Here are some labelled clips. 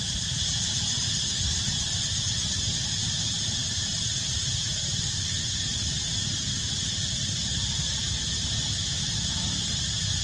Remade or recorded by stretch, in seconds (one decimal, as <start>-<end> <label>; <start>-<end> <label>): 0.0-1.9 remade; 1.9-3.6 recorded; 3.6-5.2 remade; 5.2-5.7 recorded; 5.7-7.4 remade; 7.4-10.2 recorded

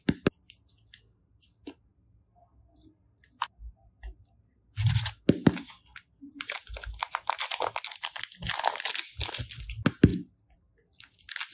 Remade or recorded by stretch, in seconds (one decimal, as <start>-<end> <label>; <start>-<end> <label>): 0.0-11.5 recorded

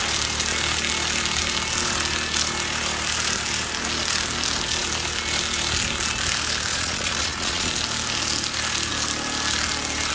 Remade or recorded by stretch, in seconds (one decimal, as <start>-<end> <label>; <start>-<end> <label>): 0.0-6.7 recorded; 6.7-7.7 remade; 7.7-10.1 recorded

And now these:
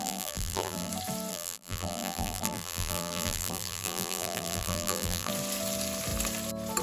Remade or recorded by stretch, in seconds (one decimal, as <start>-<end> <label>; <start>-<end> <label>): 0.0-0.9 remade; 0.9-1.3 recorded; 1.3-5.3 remade; 5.3-6.8 recorded

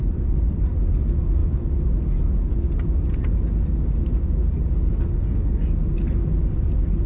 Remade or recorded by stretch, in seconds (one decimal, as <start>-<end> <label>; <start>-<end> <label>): 0.0-0.6 remade; 0.6-7.1 recorded

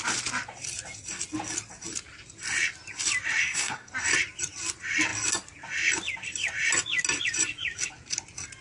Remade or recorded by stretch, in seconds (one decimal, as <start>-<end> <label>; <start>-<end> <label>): 0.0-3.4 recorded; 3.4-3.9 remade; 3.9-8.6 recorded

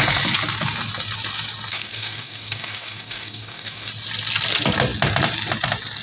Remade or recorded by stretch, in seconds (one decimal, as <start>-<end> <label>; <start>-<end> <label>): 0.0-1.7 recorded; 1.7-3.9 remade; 3.9-6.0 recorded

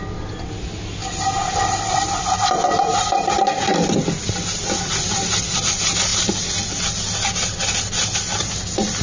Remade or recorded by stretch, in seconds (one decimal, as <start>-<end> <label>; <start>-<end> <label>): 0.0-1.0 recorded; 1.0-3.5 remade; 3.5-9.0 recorded